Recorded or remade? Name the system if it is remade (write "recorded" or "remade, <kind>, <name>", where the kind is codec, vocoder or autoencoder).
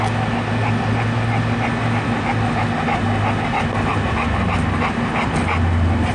recorded